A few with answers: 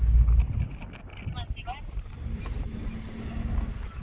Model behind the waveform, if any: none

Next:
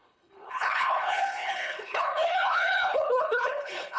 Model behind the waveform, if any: codec, HILCodec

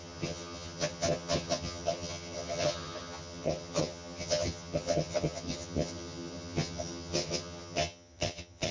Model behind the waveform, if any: vocoder, HiFi-GAN